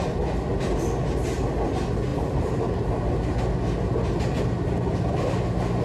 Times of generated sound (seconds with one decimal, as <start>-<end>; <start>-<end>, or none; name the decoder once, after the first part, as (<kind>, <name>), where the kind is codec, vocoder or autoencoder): none